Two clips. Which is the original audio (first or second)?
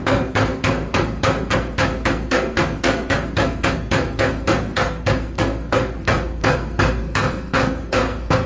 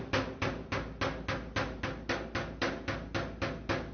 second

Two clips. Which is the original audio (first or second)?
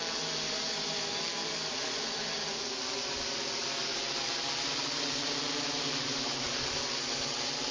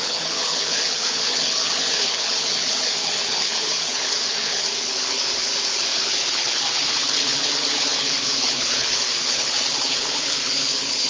first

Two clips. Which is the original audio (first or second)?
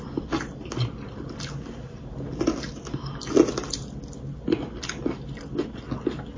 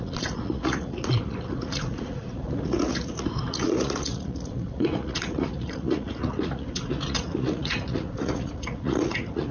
first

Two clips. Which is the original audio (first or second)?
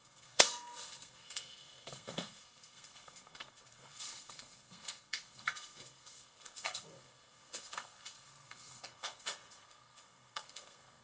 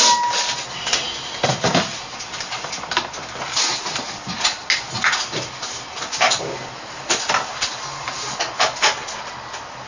second